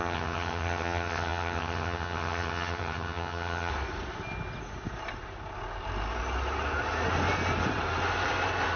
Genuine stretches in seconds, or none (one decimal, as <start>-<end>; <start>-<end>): 3.7-8.8